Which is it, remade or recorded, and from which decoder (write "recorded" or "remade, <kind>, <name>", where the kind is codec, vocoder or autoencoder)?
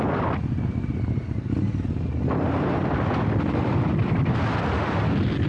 recorded